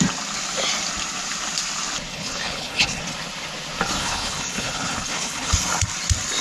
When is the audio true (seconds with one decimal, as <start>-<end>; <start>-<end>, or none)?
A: 0.0-2.1; 3.0-4.0; 5.5-6.4